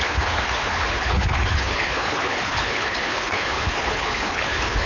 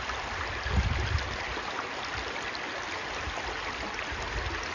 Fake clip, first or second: first